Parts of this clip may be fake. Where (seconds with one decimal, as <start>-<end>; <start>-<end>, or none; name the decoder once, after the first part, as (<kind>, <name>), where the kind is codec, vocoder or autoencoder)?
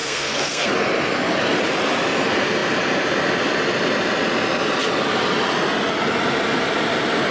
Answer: 0.0-0.7 (codec, SNAC)